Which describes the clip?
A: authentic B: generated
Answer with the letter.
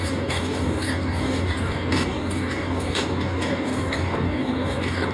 B